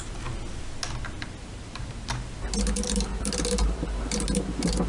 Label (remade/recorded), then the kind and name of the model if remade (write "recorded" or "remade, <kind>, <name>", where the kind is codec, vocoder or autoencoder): recorded